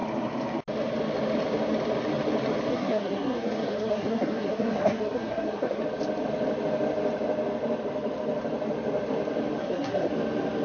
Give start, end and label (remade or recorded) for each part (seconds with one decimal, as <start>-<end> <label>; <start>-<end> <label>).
0.0-2.7 recorded; 2.7-5.8 remade; 5.8-9.6 recorded; 9.6-10.1 remade; 10.1-10.6 recorded